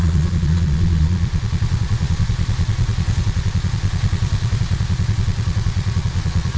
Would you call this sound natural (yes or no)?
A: no